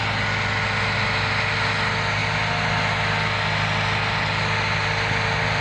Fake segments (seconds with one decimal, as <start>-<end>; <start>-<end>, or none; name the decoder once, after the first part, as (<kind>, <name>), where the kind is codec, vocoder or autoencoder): none